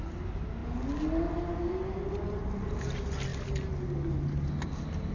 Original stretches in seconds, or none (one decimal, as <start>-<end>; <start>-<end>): 0.0-5.1